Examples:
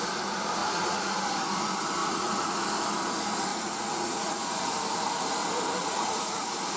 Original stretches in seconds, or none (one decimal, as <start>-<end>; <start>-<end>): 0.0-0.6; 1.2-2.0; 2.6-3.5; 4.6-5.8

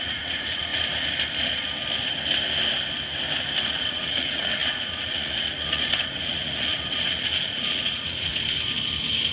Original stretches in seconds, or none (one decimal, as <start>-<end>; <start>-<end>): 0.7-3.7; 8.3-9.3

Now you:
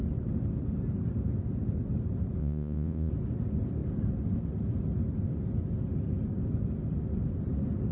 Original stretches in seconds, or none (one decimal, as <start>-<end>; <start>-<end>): 0.0-2.4; 3.1-7.9

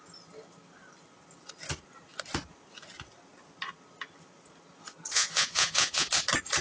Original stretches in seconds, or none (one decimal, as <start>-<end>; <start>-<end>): 0.0-5.1; 6.1-6.6

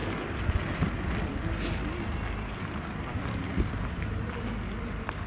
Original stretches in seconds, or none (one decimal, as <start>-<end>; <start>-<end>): 0.0-5.3